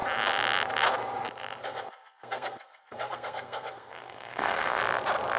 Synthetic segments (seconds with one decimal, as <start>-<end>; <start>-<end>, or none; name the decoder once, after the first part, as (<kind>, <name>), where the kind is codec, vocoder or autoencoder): 1.6-4.8 (codec, SNAC)